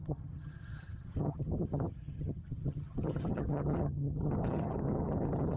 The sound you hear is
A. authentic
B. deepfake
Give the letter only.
B